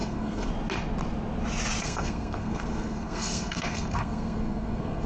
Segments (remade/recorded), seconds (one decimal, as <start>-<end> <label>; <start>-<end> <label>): 0.0-0.5 remade; 0.5-1.8 recorded; 1.8-5.1 remade